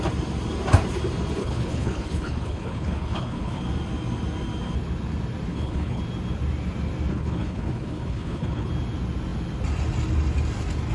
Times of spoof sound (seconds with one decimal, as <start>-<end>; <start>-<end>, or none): 1.4-3.6; 5.5-6.0; 7.1-8.7